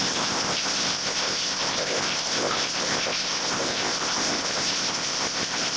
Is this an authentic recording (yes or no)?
no